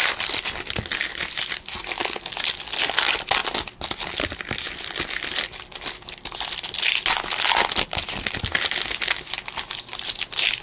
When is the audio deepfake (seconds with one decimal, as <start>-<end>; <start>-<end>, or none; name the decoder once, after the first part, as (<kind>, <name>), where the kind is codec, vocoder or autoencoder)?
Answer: none